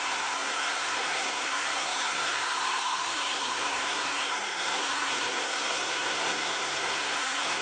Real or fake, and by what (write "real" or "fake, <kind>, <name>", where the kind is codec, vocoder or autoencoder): fake, codec, SNAC